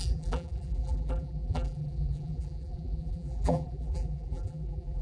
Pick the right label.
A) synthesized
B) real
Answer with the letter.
A